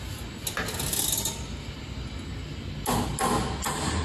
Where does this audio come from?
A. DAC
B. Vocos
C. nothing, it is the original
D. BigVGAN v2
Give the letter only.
C